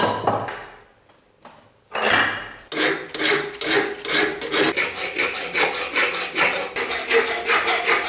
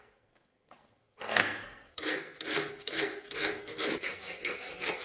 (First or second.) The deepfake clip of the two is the second